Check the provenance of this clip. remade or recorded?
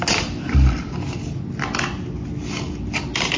recorded